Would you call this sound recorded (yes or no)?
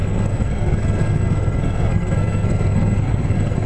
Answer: no